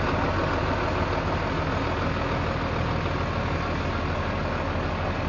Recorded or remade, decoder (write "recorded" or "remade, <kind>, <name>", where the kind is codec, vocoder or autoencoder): recorded